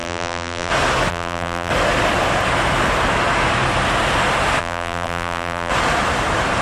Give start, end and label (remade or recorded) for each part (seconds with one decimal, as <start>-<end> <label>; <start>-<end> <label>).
0.0-0.7 remade; 0.7-1.1 recorded; 1.1-1.7 remade; 1.7-4.6 recorded; 4.6-5.7 remade; 5.7-6.6 recorded